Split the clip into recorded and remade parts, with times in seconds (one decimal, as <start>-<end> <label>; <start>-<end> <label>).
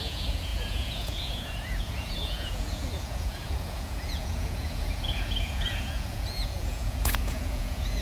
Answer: 0.0-8.0 remade